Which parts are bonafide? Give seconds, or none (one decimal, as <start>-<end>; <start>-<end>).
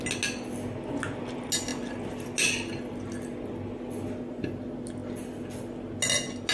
0.0-6.5